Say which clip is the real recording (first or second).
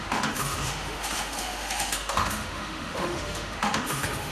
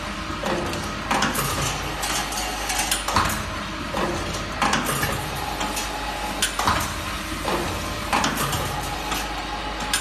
second